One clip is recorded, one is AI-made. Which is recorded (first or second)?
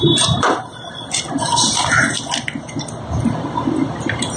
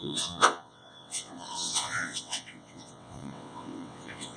first